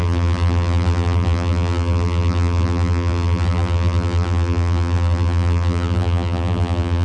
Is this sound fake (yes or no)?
yes